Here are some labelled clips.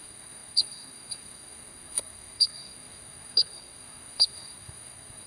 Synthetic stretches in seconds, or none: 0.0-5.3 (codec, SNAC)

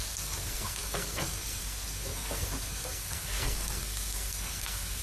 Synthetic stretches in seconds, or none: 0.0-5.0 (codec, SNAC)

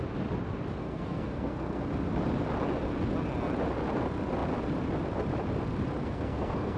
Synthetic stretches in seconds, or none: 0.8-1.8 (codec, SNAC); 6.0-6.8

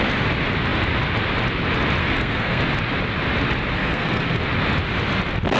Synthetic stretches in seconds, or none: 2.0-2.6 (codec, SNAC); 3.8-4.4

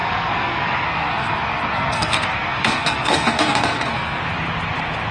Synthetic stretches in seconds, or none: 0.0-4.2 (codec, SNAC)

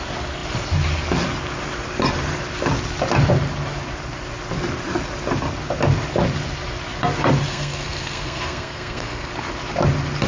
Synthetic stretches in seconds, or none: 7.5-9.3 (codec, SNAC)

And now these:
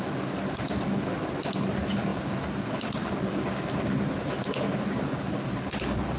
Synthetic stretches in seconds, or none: none